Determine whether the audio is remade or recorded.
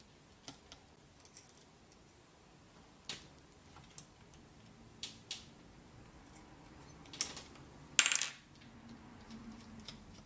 recorded